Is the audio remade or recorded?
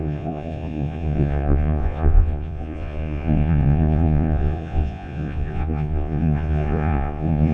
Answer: remade